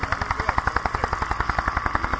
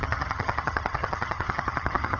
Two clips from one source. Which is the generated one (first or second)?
second